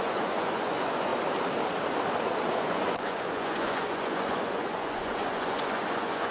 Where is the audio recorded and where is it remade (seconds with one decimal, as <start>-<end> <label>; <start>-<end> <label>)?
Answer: 0.0-1.1 remade; 1.1-2.5 recorded; 2.5-6.3 remade